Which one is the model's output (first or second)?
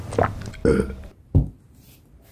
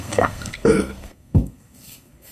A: second